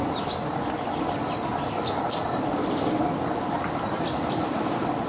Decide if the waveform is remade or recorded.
recorded